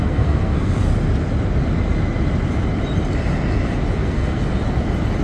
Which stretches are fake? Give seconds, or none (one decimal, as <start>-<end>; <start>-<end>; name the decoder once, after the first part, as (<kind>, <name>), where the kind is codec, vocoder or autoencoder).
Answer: 0.0-0.9 (codec, SNAC); 4.0-4.4